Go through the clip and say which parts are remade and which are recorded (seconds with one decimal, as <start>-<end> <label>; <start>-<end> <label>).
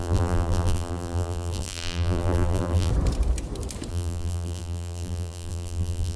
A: 0.0-2.9 remade; 2.9-3.9 recorded; 3.9-6.2 remade